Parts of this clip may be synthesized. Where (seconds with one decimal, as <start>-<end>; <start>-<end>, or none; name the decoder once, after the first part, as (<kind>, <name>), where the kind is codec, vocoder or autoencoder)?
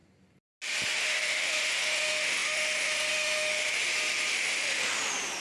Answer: 1.0-3.6 (autoencoder, DAC-VAE); 4.3-4.8